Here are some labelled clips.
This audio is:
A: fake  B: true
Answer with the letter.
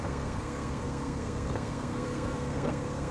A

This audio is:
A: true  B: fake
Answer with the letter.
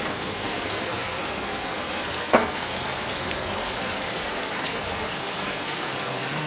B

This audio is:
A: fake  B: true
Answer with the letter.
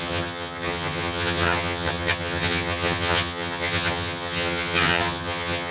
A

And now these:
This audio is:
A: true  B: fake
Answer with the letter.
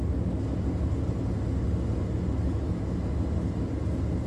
A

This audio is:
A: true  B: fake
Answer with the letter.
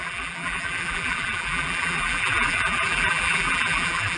B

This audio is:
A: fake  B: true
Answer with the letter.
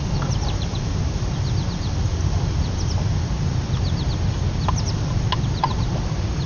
B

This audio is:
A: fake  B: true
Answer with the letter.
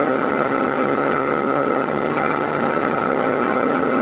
A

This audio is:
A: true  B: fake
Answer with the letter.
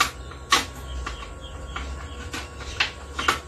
A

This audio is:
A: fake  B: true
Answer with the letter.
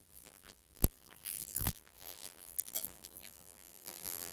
A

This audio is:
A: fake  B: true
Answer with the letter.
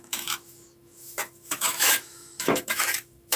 A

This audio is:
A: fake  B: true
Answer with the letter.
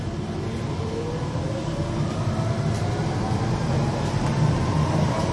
B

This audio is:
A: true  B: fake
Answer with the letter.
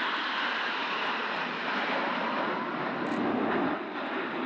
A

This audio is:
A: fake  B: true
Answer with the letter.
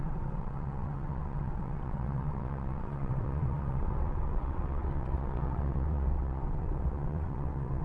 A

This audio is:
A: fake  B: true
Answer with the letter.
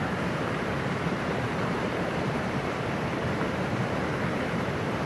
A